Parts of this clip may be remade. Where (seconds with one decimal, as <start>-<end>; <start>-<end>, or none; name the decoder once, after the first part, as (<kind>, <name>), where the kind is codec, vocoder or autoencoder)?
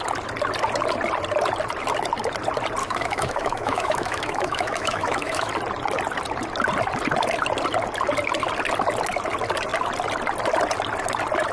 2.8-5.5 (autoencoder, DAC-VAE)